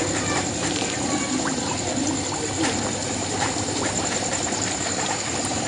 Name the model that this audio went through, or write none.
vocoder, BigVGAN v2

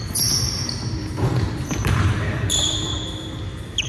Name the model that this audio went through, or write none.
vocoder, BigVGAN v2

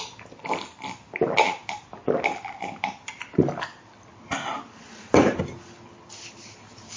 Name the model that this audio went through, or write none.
none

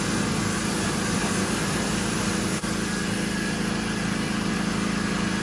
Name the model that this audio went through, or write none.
vocoder, BigVGAN v2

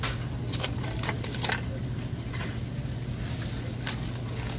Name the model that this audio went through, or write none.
none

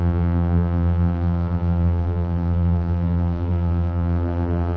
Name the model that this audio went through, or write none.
vocoder, BigVGAN v2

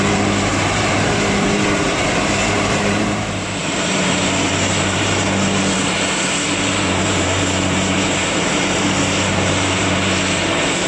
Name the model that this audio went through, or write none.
vocoder, BigVGAN v2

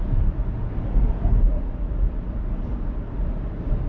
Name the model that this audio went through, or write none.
none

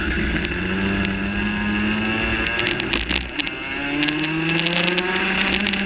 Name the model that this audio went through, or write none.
none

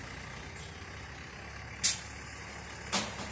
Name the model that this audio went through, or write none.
none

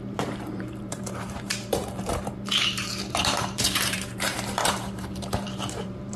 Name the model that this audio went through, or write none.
vocoder, BigVGAN v2